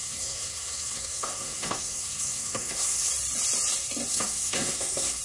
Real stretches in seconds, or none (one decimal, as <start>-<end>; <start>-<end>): 3.1-4.1